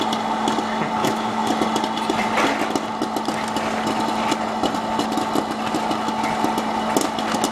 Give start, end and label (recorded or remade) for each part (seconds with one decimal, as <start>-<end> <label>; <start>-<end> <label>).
0.0-1.0 recorded; 1.0-1.5 remade; 1.5-7.5 recorded